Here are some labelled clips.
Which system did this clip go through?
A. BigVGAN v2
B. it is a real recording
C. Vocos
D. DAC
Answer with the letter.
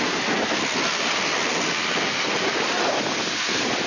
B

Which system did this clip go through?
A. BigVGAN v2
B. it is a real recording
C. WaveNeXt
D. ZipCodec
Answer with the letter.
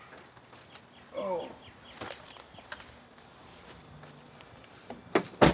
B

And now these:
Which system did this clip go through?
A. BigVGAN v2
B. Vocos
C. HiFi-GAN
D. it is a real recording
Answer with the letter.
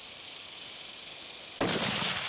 D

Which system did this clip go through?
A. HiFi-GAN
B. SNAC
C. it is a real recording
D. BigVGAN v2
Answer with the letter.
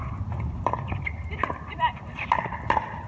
D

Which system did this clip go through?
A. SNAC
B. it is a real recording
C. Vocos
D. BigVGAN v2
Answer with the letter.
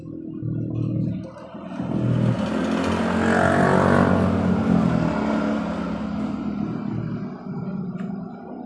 B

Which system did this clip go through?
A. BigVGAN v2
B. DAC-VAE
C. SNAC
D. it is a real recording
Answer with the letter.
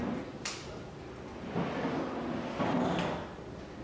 D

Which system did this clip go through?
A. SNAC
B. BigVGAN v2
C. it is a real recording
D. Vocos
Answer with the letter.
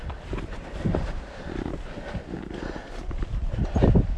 C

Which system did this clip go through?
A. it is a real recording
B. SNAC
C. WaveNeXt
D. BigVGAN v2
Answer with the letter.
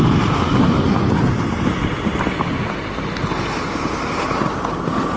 A